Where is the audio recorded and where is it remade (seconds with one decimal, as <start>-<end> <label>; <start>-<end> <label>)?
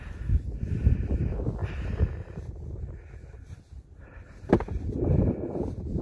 0.0-6.0 recorded